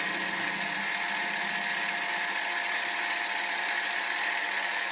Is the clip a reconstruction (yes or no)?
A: no